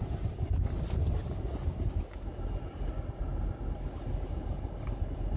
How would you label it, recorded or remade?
recorded